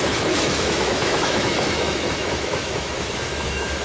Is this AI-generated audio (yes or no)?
yes